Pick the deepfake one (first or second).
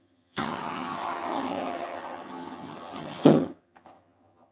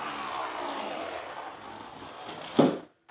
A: first